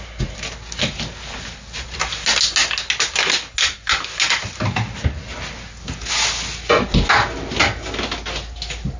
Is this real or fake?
real